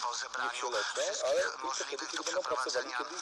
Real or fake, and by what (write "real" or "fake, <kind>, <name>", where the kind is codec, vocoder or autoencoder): real